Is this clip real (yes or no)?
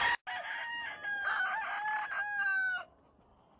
yes